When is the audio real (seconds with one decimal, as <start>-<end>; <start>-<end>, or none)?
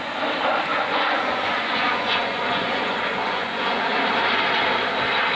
0.0-0.7; 3.9-5.4